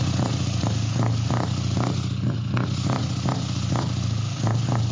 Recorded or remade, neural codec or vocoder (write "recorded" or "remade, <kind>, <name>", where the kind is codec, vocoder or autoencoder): recorded